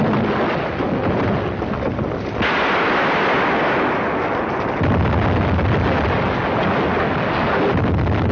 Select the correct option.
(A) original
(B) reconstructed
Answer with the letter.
A